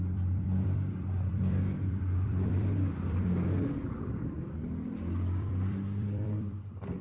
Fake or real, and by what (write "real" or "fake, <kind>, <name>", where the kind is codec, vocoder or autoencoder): fake, vocoder, BigVGAN v2